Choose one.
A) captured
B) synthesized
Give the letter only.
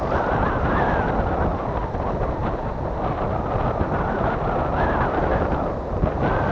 A